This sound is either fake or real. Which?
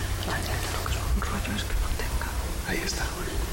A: fake